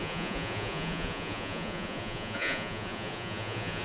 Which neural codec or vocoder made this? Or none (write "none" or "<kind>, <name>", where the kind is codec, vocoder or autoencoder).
vocoder, Vocos